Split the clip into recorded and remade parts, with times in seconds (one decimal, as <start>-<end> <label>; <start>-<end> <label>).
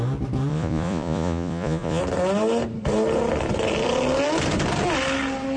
0.0-0.5 recorded; 0.5-2.0 remade; 2.0-5.6 recorded